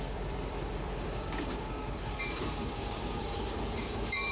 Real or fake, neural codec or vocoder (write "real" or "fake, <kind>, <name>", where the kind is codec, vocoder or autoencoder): fake, codec, DAC